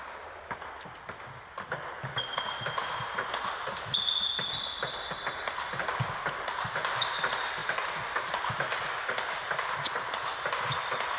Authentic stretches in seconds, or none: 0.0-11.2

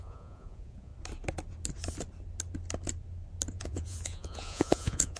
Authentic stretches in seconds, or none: 0.9-3.5

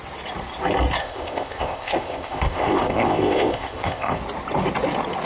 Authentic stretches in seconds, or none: 0.0-1.0; 4.2-5.3